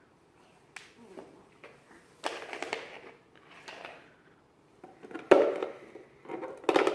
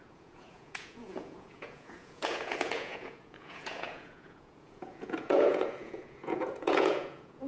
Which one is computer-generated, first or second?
second